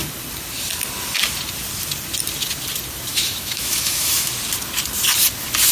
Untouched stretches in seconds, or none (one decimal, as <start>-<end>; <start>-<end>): 0.0-3.1; 4.3-5.7